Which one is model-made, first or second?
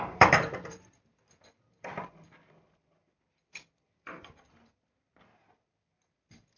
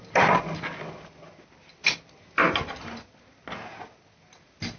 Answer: first